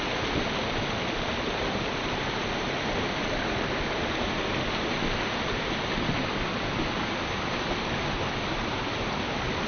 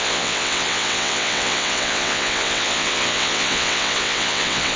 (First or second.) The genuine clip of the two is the first